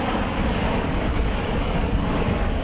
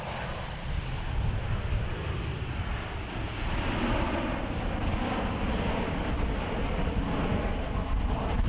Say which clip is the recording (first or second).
second